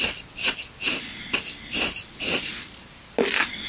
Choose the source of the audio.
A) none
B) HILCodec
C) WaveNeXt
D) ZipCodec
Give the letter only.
A